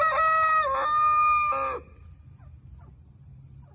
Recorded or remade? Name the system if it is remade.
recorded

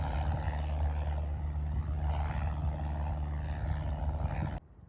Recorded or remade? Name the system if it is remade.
recorded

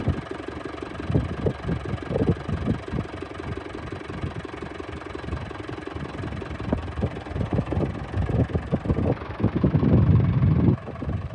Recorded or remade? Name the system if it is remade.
recorded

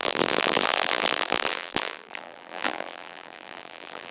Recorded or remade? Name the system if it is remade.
remade, vocoder, BigVGAN v2